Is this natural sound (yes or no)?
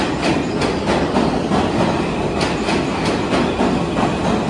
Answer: yes